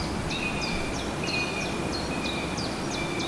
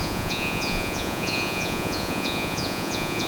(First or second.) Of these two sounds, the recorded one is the first